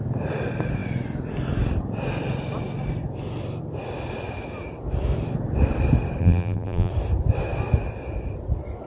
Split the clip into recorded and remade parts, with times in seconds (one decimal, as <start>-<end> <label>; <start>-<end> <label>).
0.0-6.2 recorded; 6.2-6.9 remade; 6.9-8.9 recorded